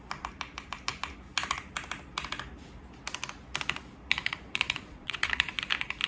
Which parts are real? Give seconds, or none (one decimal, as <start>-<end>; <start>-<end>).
0.0-4.2; 5.6-6.1